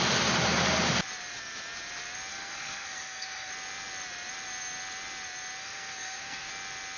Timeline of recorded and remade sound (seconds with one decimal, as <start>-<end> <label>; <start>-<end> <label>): 0.0-2.3 recorded; 2.3-3.5 remade; 3.5-5.6 recorded; 5.6-6.5 remade; 6.5-7.0 recorded